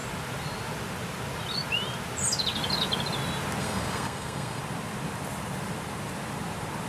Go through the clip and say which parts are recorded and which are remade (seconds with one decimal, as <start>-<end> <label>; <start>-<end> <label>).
0.0-3.6 recorded; 3.6-4.6 remade; 4.6-6.9 recorded